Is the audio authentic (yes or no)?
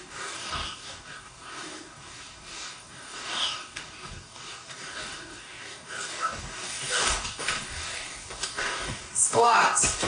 no